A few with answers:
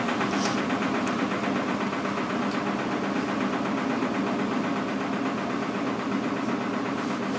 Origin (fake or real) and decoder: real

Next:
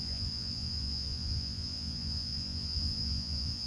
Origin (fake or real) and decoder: fake, vocoder, Vocos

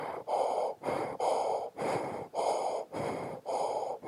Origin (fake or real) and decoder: fake, vocoder, BigVGAN v2